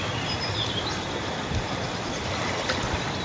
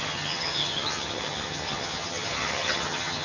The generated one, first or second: second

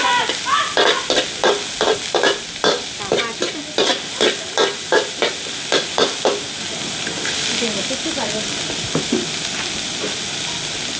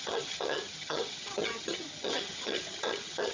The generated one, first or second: second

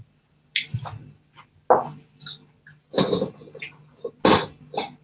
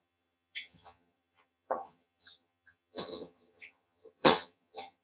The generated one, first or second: second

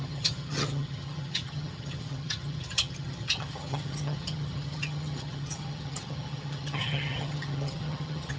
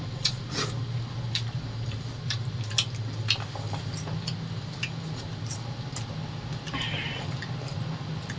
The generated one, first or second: first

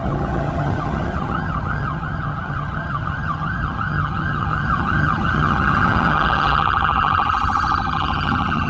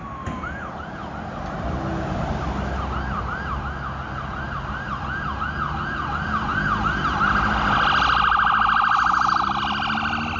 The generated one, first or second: first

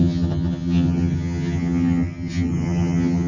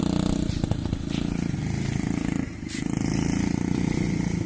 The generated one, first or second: first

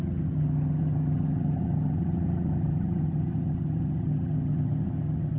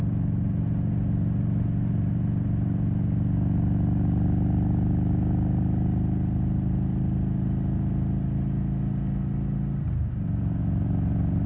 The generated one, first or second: first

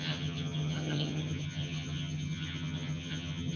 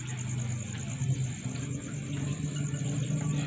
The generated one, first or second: first